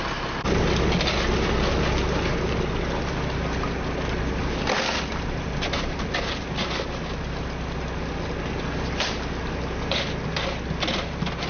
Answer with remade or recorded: recorded